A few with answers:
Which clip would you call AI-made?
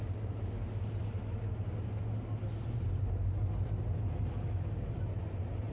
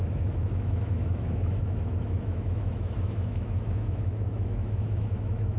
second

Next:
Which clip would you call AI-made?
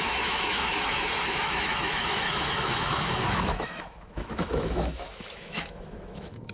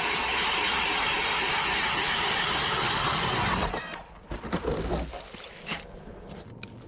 first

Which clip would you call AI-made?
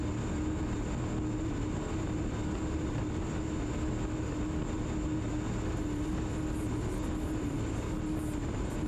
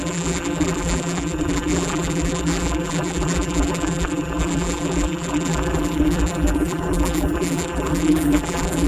second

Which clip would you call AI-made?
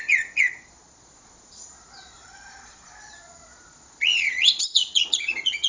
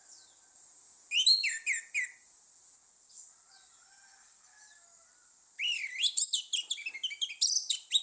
first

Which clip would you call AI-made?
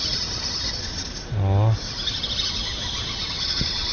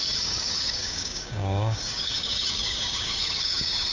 second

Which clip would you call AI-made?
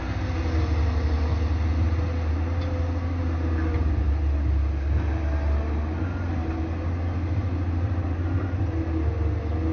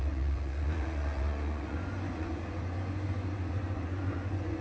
second